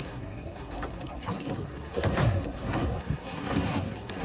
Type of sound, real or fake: fake